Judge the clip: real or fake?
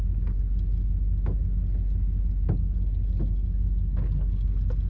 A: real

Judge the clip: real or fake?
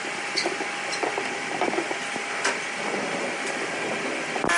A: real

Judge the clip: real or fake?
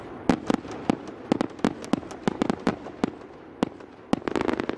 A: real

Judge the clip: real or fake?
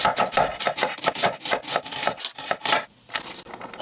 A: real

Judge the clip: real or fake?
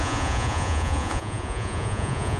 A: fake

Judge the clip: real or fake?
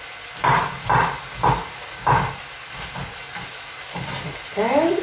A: real